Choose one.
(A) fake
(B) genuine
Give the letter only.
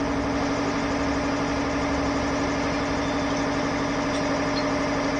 B